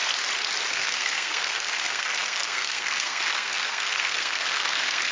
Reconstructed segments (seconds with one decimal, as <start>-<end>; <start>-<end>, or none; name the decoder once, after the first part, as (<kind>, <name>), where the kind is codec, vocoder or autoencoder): 0.7-5.1 (codec, SNAC)